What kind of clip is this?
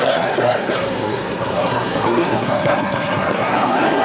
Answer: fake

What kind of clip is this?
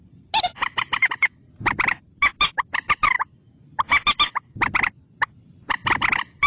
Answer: real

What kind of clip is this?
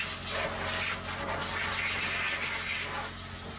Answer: real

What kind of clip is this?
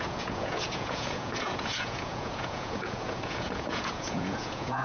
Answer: fake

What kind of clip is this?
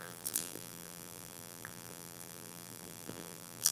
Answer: fake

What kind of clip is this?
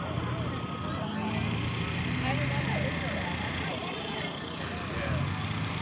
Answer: real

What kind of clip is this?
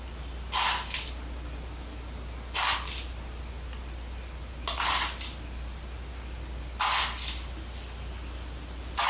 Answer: real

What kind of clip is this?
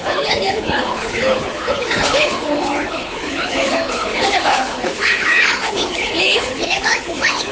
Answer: fake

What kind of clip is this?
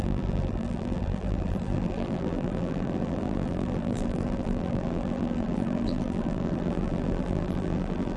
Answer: fake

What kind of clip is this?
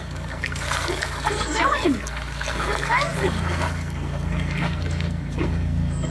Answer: fake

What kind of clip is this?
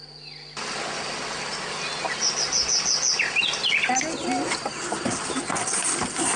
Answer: real